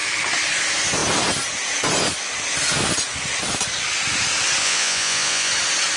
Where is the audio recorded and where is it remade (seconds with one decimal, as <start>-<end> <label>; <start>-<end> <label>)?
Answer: 0.0-4.6 recorded; 4.6-5.5 remade; 5.5-6.0 recorded